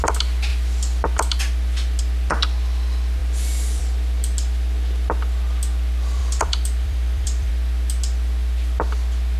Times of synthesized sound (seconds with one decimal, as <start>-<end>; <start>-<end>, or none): 6.2-7.5

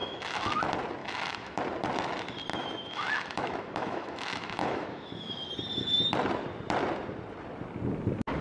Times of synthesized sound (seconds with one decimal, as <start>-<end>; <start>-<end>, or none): 0.0-0.6; 1.0-1.6; 2.5-5.5

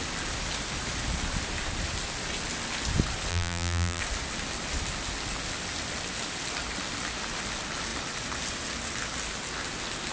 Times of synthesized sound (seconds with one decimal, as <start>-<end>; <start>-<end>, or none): 3.3-4.0